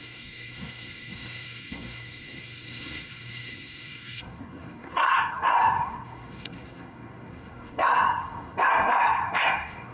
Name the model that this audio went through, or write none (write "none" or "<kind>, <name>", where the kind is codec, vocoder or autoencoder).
codec, SNAC